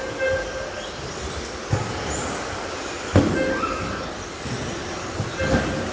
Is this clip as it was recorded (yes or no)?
yes